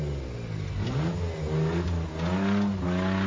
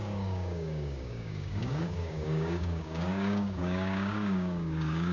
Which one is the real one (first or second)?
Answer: first